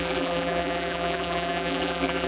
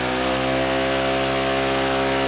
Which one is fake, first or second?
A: first